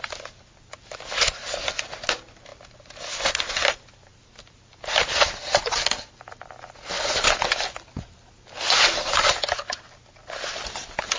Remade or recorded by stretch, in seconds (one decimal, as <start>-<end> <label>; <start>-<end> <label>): 0.0-11.2 recorded